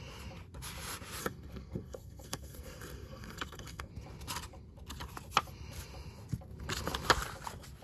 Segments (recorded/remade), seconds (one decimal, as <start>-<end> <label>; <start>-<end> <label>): 0.0-1.2 recorded; 1.2-3.9 remade; 3.9-7.8 recorded